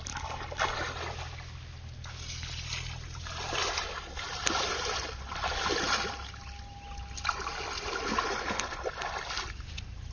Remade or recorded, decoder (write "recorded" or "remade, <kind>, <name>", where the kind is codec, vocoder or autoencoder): recorded